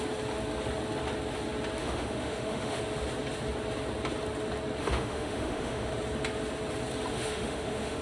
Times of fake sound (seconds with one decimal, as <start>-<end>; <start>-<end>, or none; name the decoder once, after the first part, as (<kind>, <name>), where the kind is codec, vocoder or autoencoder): 1.8-2.8 (autoencoder, DAC-VAE); 4.8-5.9; 7.1-8.0